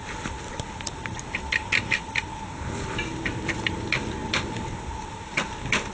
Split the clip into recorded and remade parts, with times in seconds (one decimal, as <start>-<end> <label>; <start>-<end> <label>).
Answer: 0.0-5.9 recorded